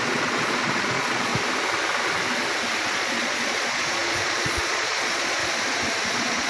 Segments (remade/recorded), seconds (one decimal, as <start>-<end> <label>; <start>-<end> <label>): 0.0-1.3 remade; 1.3-2.9 recorded; 2.9-5.4 remade; 5.4-6.1 recorded; 6.1-6.5 remade